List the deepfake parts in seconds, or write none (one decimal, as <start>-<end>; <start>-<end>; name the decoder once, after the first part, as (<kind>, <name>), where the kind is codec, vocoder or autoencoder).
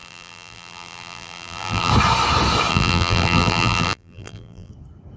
0.0-1.9 (vocoder, BigVGAN v2); 2.7-4.7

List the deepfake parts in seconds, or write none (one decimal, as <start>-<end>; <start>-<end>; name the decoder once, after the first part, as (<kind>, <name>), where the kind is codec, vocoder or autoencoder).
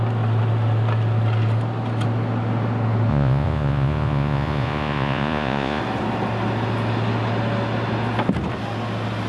3.1-5.8 (vocoder, Vocos)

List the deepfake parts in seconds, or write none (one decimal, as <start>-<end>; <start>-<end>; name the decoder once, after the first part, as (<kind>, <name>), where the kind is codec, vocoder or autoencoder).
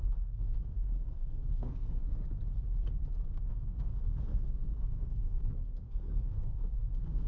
0.0-2.2 (codec, SNAC); 3.5-7.3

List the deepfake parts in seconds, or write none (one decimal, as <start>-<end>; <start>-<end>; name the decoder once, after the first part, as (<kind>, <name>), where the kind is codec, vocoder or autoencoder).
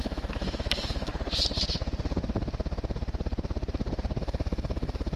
0.0-1.1 (autoencoder, DAC-VAE); 4.2-5.2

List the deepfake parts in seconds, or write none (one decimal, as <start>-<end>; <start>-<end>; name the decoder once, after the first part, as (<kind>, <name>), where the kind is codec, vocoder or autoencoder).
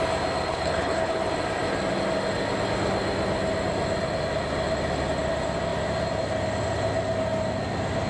0.5-1.2 (codec, HILCodec)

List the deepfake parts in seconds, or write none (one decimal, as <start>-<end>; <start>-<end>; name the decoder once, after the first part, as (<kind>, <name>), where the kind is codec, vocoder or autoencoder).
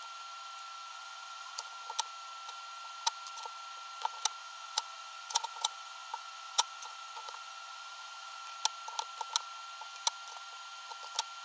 0.9-1.7 (vocoder, Vocos); 4.4-8.4